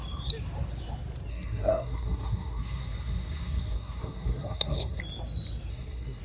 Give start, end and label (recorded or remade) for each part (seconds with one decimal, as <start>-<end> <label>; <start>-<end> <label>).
0.0-1.3 recorded; 1.3-5.0 remade; 5.0-5.7 recorded; 5.7-6.2 remade